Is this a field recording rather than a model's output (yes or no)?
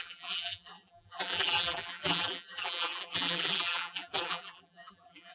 no